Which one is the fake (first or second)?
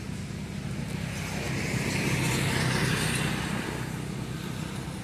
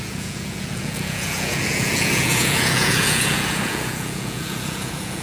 second